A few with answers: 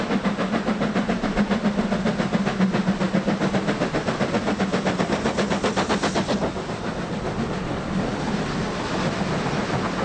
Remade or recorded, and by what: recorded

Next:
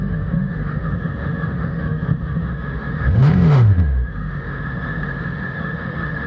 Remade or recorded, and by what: remade, autoencoder, DAC-VAE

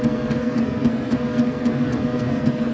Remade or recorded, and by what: remade, codec, SNAC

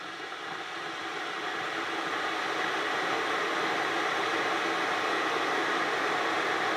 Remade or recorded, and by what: recorded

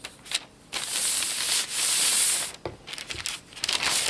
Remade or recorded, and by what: recorded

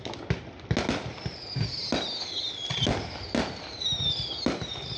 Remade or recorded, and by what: recorded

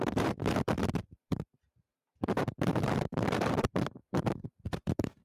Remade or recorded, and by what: remade, vocoder, BigVGAN v2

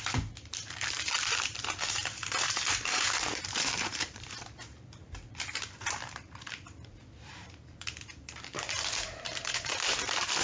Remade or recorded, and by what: remade, vocoder, BigVGAN v2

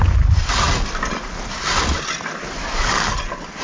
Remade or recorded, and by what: recorded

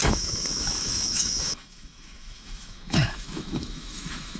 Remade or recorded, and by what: remade, autoencoder, DAC-VAE